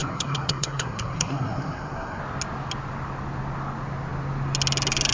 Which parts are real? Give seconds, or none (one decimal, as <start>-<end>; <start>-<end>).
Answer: 2.2-5.1